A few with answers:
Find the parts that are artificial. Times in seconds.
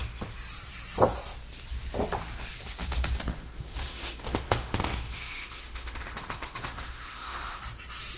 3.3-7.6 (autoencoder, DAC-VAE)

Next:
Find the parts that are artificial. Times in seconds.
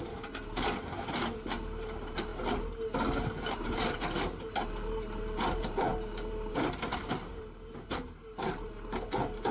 0.0-2.3 (vocoder, BigVGAN v2); 3.6-9.5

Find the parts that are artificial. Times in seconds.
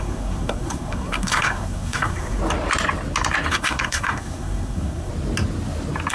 0.0-2.4 (codec, SNAC); 3.5-5.1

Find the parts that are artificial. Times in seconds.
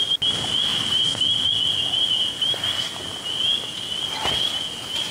0.7-1.2 (vocoder, BigVGAN v2)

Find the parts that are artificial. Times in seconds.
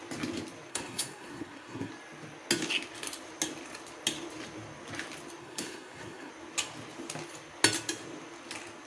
0.7-1.9 (codec, SNAC); 5.4-6.3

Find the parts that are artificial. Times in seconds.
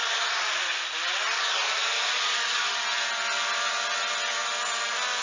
none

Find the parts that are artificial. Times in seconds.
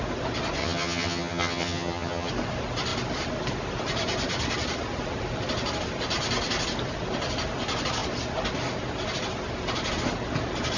0.6-2.3 (vocoder, HiFi-GAN)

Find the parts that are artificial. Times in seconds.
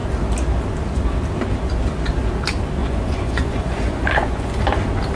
2.8-4.6 (vocoder, Vocos)